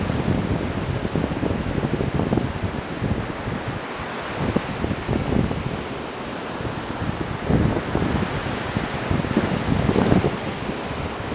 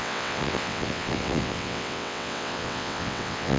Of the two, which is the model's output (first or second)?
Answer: second